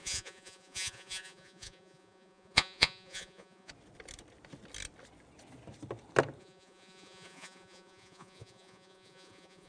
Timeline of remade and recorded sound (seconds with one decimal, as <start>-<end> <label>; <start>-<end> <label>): 0.0-3.7 remade; 3.7-6.4 recorded; 6.4-9.7 remade